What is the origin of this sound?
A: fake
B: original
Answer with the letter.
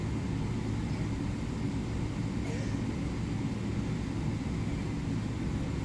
B